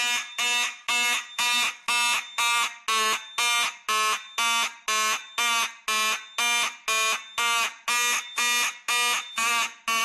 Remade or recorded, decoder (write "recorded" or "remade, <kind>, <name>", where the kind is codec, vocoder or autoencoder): recorded